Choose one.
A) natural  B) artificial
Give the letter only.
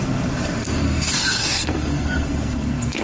B